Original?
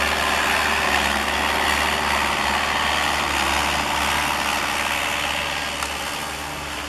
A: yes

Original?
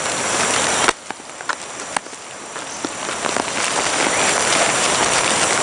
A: yes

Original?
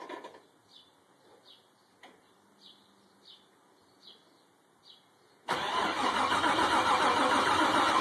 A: yes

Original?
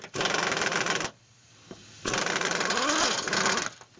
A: yes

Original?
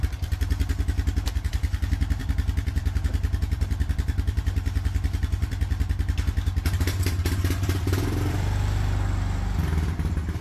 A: no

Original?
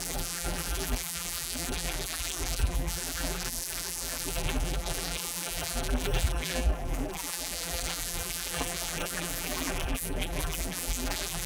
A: no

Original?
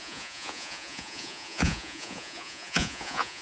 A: no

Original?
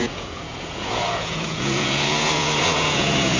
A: no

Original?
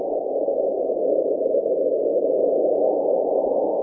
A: yes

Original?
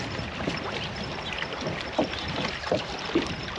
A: yes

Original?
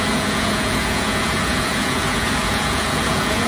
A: no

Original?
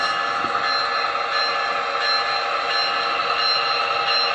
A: yes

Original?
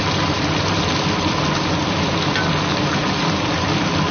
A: yes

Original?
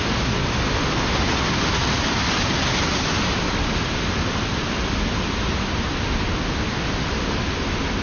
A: yes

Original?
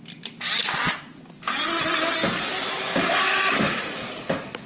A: yes